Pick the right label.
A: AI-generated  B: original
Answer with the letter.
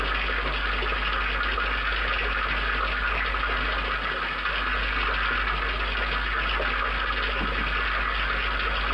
B